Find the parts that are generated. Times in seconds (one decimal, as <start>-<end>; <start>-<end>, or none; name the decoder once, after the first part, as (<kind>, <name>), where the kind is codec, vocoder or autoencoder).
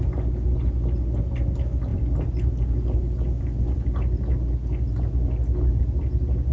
none